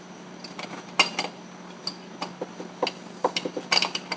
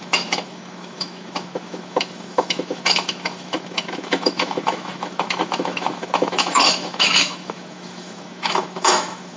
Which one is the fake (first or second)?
second